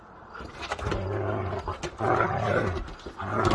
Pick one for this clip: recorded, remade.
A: recorded